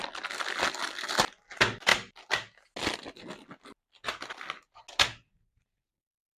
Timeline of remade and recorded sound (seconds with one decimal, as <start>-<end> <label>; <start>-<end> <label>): 0.0-6.4 recorded